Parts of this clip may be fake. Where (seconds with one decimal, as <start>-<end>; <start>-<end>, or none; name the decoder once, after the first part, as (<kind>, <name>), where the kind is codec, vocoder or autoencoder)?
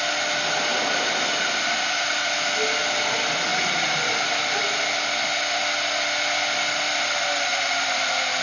none